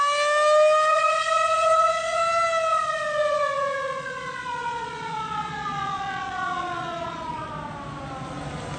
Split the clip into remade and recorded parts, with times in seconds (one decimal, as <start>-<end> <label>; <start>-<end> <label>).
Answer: 0.0-0.9 recorded; 0.9-2.2 remade; 2.2-2.7 recorded; 2.7-7.5 remade; 7.5-8.8 recorded